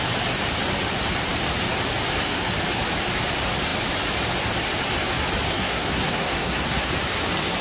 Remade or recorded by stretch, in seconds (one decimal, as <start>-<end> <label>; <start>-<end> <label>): 0.0-5.5 recorded; 5.5-6.9 remade; 6.9-7.6 recorded